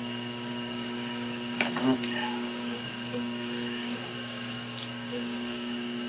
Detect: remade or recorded remade